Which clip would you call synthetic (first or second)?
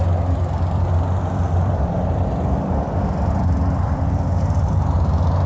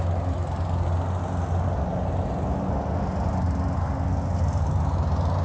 first